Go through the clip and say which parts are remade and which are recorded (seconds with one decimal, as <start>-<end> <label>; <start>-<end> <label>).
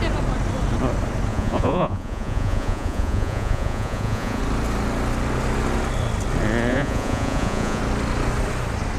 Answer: 0.0-1.3 recorded; 1.3-4.4 remade; 4.4-6.7 recorded; 6.7-7.8 remade; 7.8-9.0 recorded